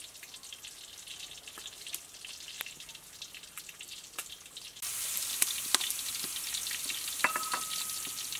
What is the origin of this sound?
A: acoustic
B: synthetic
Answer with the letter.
A